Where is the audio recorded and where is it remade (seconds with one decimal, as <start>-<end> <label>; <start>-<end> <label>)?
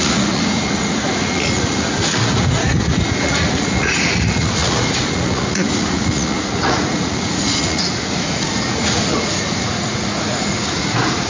0.0-11.3 remade